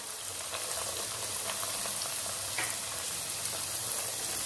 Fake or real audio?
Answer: real